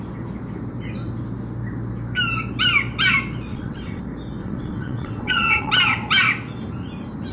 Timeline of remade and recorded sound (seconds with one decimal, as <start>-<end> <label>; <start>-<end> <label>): 0.0-3.5 recorded; 3.5-4.0 remade; 4.0-4.4 recorded; 4.4-5.7 remade; 5.7-7.3 recorded